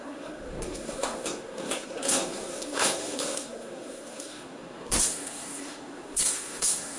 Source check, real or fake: fake